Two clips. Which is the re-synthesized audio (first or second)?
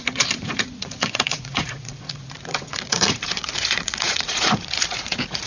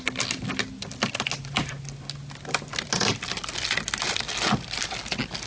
first